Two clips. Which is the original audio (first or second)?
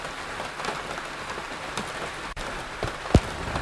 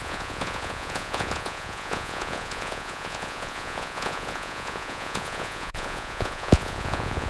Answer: first